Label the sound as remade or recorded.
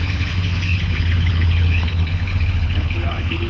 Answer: remade